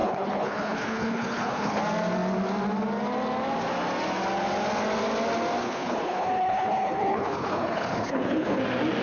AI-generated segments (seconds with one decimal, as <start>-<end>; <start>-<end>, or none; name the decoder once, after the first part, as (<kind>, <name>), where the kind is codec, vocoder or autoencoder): 0.0-1.8 (codec, HILCodec); 5.6-8.6